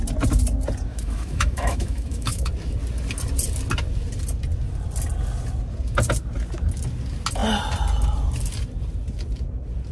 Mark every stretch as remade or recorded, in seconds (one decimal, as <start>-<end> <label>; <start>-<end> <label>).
0.0-0.9 recorded; 0.9-2.5 remade; 2.5-9.9 recorded